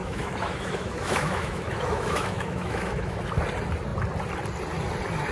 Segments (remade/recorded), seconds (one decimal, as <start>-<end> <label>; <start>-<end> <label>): 0.0-3.2 remade; 3.2-5.3 recorded